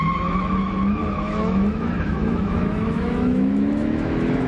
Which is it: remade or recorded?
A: remade